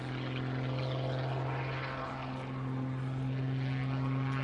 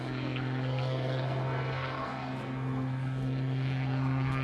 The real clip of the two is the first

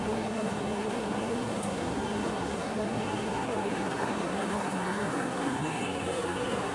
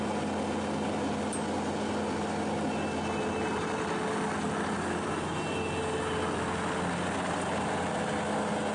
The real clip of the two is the second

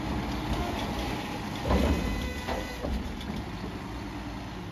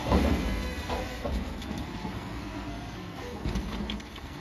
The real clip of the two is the first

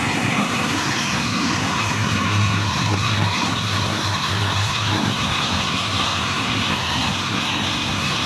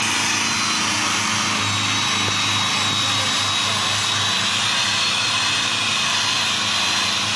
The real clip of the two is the second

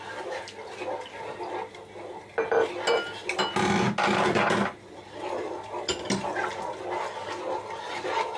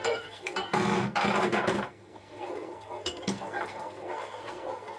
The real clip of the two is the first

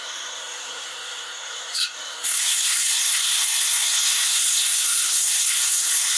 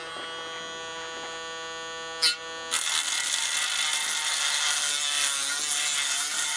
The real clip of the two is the second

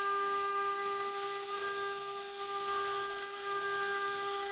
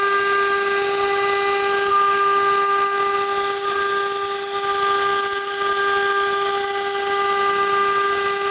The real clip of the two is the second